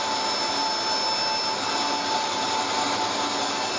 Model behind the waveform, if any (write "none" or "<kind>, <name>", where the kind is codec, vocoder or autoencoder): none